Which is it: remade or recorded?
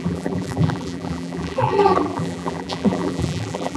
remade